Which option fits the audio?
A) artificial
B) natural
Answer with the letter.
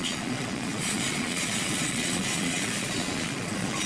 A